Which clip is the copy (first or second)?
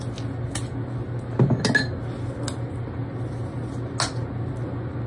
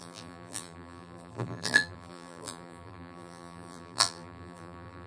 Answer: second